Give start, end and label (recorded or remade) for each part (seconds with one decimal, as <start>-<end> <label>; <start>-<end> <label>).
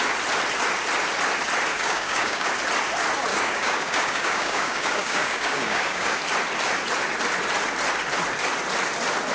0.0-1.7 recorded; 1.7-2.5 remade; 2.5-3.3 recorded; 3.3-6.2 remade; 6.2-9.3 recorded